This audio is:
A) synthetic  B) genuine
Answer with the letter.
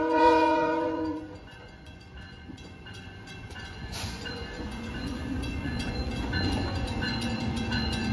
A